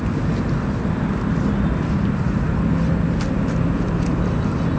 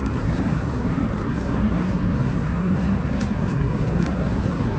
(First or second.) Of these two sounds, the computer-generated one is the second